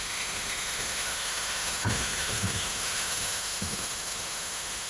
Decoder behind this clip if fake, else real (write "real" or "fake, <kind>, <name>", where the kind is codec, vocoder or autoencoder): fake, autoencoder, DAC-VAE